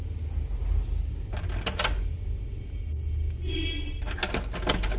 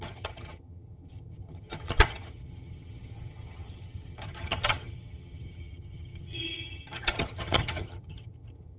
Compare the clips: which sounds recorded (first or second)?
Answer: first